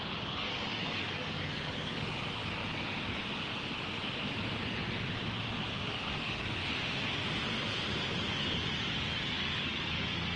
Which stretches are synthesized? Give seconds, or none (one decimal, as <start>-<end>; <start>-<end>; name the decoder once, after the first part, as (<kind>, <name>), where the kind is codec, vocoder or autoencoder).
0.0-2.4 (codec, DAC); 5.9-6.6; 8.0-10.4

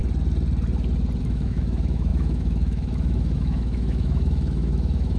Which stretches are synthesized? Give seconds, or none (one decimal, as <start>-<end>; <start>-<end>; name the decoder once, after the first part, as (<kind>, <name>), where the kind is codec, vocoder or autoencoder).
1.2-5.2 (autoencoder, DAC-VAE)

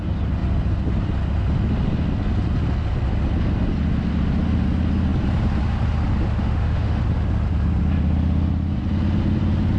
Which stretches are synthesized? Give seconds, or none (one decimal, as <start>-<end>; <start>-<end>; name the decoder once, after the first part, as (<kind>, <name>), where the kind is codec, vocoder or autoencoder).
6.4-7.0 (autoencoder, DAC-VAE)

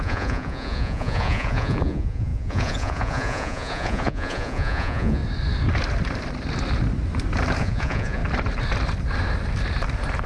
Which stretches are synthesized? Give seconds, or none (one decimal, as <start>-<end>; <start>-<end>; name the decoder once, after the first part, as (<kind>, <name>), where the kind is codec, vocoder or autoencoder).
0.0-5.2 (vocoder, Vocos); 7.6-8.2